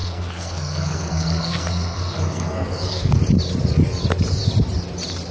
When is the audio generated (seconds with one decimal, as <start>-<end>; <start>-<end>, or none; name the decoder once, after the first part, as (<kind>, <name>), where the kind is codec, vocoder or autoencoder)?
0.0-3.2 (codec, SNAC)